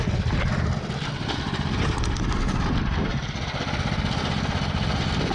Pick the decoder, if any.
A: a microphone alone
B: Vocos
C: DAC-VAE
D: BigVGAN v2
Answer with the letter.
A